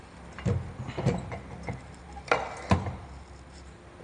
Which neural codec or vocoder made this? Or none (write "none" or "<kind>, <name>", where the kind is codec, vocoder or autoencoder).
none